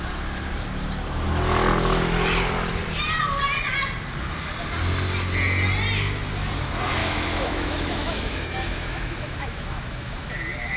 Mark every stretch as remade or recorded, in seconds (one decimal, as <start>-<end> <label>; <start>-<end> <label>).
0.0-7.0 recorded; 7.0-10.3 remade; 10.3-10.8 recorded